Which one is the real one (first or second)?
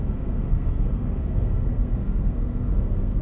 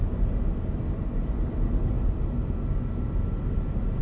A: second